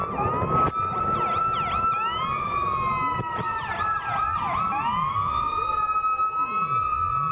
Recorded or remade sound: recorded